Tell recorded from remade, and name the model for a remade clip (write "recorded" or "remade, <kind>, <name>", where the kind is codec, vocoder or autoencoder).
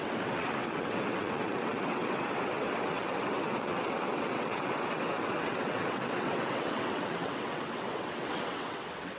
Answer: remade, vocoder, WaveNeXt